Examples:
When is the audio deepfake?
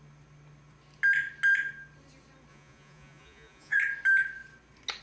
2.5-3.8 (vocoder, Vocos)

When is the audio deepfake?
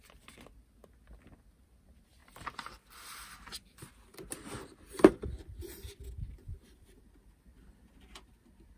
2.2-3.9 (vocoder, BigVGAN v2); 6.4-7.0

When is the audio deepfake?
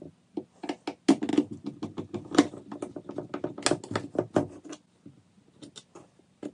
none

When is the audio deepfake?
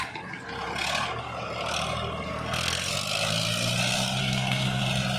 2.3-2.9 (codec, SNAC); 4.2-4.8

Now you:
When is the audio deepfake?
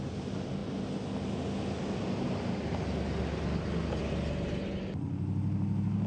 none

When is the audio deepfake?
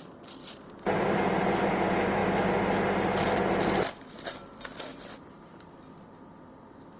0.4-1.6 (vocoder, BigVGAN v2)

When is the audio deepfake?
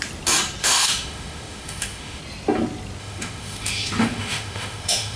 0.6-2.2 (autoencoder, DAC-VAE); 3.0-5.2